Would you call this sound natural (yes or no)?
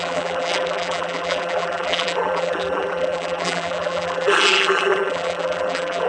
no